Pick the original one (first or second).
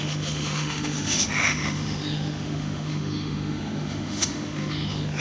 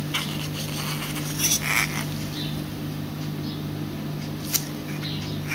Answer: second